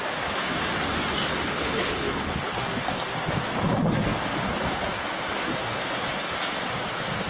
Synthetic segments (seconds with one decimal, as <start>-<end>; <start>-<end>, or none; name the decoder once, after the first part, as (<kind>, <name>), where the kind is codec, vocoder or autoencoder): 1.3-2.6 (codec, HILCodec)